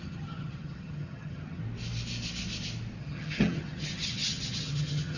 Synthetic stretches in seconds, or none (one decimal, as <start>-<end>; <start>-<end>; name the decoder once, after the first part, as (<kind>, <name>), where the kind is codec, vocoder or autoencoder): 0.0-1.6 (vocoder, HiFi-GAN); 3.0-5.2